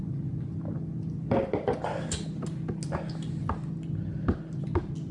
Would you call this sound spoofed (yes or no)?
no